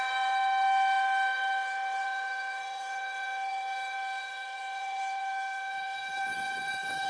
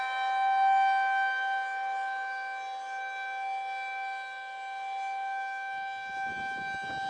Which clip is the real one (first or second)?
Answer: second